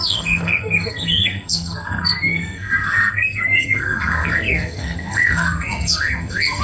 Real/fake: fake